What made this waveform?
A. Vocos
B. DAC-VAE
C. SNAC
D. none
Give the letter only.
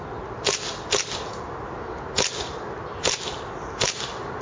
D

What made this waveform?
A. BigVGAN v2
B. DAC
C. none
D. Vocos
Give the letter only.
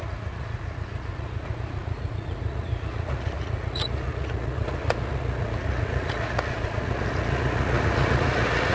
D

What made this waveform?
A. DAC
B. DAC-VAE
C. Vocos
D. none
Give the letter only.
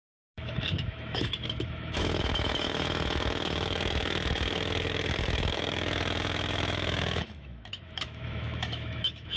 B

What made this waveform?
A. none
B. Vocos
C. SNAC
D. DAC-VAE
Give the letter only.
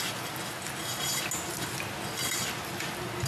A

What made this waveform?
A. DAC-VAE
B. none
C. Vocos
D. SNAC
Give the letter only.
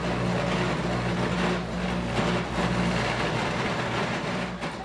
B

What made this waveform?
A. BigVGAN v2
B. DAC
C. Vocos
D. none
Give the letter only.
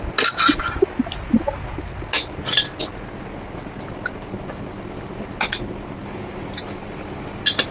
D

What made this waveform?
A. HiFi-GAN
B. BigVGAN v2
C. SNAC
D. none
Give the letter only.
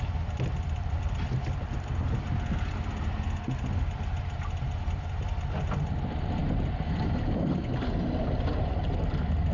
D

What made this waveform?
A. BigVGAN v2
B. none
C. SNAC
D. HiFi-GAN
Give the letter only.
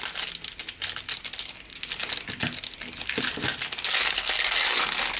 B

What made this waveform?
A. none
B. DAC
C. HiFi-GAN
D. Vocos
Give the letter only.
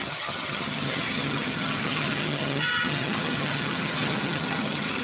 C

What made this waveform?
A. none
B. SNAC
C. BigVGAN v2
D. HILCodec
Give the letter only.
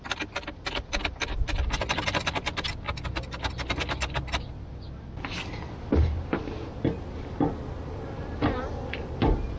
A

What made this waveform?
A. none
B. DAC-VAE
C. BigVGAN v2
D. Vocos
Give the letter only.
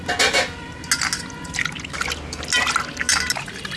A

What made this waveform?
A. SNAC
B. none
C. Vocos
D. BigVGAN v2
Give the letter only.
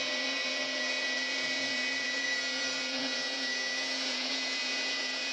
C